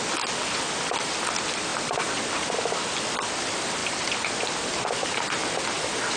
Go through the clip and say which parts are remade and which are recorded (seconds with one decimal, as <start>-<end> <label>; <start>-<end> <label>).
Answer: 0.0-1.7 recorded; 1.7-2.5 remade; 2.5-3.8 recorded; 3.8-4.6 remade; 4.6-6.2 recorded